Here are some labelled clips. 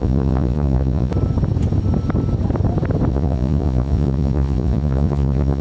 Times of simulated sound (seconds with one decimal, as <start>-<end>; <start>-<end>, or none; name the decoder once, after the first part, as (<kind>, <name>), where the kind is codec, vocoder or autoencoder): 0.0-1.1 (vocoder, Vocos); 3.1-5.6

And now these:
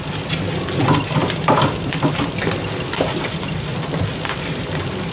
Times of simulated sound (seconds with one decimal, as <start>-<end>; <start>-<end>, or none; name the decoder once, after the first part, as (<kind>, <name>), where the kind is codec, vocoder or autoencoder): none

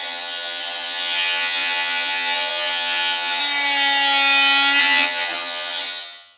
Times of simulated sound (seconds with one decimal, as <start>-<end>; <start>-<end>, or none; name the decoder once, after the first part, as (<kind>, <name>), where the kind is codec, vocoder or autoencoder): 0.0-3.4 (vocoder, HiFi-GAN); 4.8-6.4

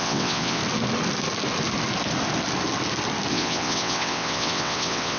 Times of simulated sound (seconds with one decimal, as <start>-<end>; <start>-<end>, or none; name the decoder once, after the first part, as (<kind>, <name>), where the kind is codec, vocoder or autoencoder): 0.0-0.6 (vocoder, WaveNeXt); 3.3-5.2